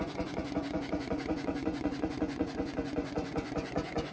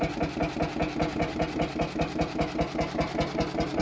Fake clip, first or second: first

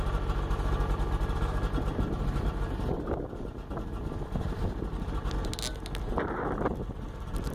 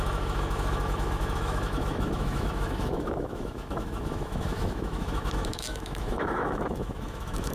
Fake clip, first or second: second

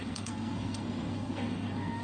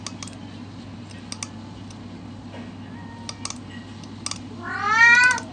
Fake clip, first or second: first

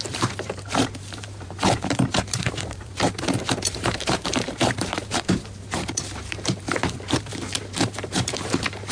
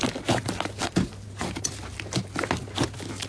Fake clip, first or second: first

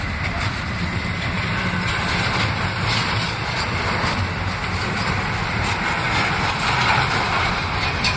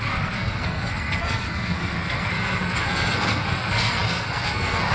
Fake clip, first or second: second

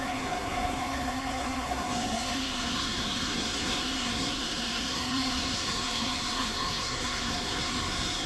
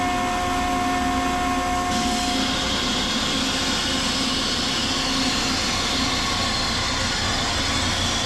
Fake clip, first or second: first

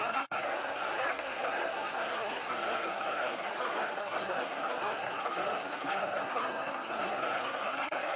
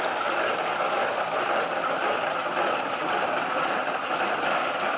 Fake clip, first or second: first